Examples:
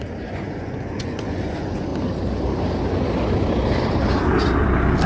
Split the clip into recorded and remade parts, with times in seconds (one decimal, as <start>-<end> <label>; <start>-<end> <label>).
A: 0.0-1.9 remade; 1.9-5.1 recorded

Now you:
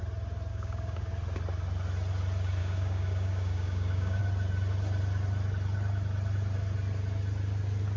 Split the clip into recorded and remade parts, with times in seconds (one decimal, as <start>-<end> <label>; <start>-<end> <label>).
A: 0.0-0.5 recorded; 0.5-1.1 remade; 1.1-2.6 recorded; 2.6-4.2 remade; 4.2-8.0 recorded

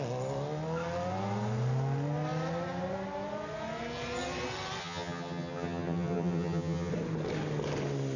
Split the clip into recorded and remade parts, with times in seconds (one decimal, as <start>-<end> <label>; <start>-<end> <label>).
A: 0.0-4.8 recorded; 4.8-6.9 remade; 6.9-8.2 recorded